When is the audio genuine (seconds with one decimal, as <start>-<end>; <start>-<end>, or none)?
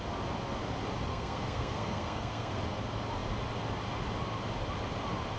0.0-1.1; 2.6-5.4